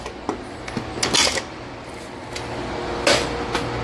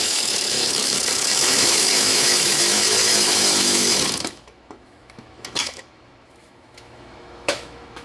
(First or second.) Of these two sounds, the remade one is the second